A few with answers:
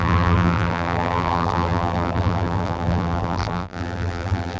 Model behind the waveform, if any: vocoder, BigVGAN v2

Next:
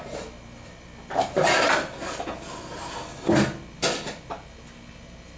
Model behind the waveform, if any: none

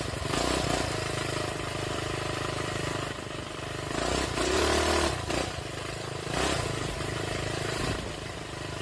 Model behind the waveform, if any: vocoder, BigVGAN v2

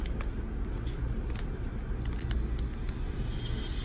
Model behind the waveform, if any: none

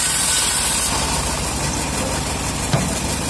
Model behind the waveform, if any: none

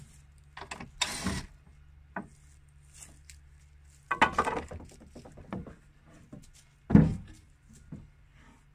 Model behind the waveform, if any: none